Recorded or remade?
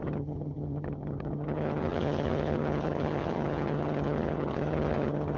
remade